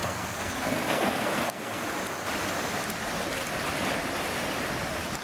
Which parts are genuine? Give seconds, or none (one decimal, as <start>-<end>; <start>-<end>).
1.8-5.2